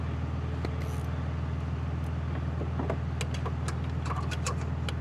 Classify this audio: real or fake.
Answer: real